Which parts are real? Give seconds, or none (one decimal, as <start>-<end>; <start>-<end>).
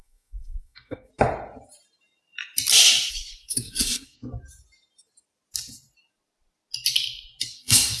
1.1-3.1; 4.3-7.4